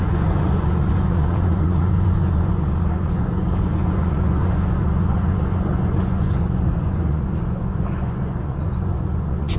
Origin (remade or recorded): remade